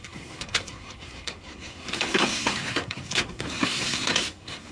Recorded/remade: remade